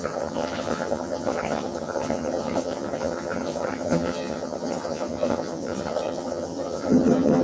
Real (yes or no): no